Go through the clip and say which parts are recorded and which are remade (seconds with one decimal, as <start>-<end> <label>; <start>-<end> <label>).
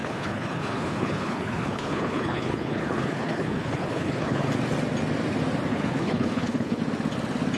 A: 0.0-4.5 remade; 4.5-5.7 recorded; 5.7-6.8 remade; 6.8-7.6 recorded